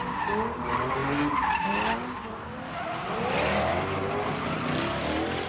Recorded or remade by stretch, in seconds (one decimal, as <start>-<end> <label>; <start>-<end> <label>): 0.0-5.5 recorded